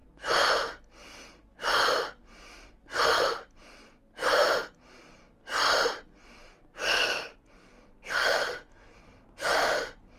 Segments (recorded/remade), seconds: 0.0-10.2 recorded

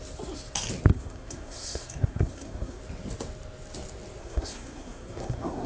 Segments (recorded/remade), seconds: 0.0-0.9 recorded; 0.9-2.8 remade; 2.8-4.2 recorded; 4.2-5.7 remade

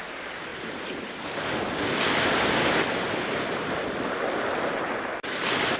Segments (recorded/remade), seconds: 0.0-0.5 recorded; 0.5-1.4 remade; 1.4-5.8 recorded

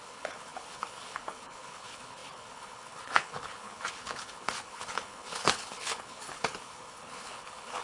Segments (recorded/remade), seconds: 0.0-7.8 remade

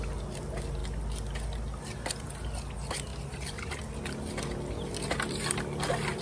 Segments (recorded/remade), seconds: 0.0-3.1 recorded; 3.1-3.7 remade; 3.7-6.2 recorded